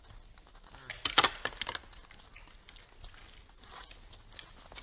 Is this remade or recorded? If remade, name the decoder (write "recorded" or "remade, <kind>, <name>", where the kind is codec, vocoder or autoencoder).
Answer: recorded